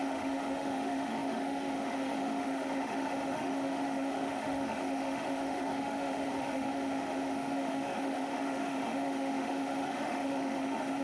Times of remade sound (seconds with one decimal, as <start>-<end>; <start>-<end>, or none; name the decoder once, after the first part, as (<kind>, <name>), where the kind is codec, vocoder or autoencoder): 0.0-11.0 (autoencoder, DAC-VAE)